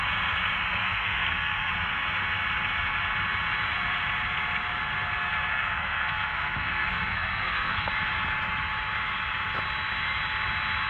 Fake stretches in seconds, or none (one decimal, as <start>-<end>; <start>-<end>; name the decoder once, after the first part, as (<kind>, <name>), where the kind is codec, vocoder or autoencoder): 0.8-1.7 (codec, SNAC); 5.5-7.9